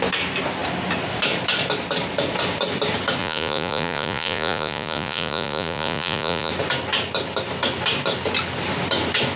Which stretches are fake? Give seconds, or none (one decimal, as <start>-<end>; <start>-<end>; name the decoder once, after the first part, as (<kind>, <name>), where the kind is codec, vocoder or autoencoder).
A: 3.2-6.5 (vocoder, Vocos)